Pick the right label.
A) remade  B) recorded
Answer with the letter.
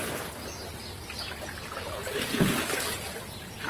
A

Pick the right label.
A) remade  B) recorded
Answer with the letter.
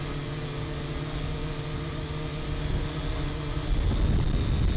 B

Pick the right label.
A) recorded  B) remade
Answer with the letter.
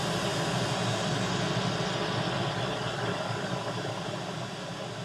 A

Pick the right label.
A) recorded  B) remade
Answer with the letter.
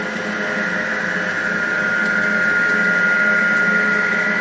A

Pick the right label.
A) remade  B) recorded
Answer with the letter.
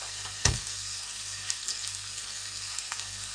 A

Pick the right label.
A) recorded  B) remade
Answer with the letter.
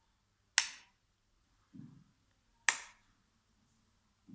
A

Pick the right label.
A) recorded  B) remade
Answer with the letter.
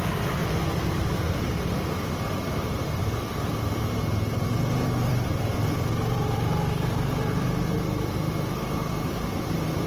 B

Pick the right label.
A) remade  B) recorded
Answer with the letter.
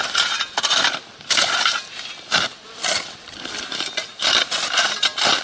B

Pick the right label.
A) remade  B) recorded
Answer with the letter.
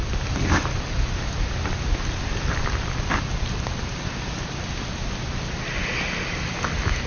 B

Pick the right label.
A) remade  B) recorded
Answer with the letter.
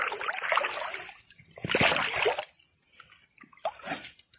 B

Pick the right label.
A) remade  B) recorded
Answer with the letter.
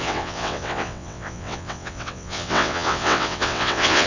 A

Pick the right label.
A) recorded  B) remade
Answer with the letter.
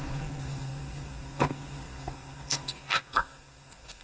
B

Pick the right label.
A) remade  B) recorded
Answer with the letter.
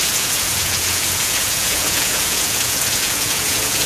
A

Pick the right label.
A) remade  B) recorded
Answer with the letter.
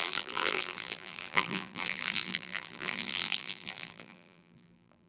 A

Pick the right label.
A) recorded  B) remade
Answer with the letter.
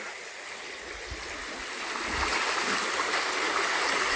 A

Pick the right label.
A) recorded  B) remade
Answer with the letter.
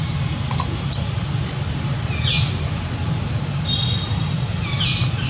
A